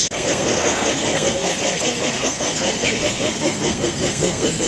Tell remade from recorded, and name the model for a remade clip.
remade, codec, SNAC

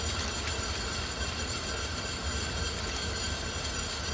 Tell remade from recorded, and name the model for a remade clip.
recorded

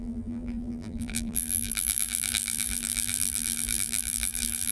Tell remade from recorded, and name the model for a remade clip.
remade, vocoder, BigVGAN v2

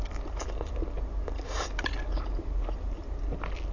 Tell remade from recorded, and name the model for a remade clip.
recorded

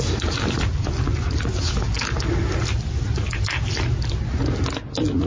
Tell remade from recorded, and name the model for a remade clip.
recorded